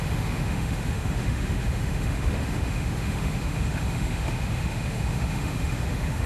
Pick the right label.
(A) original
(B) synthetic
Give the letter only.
B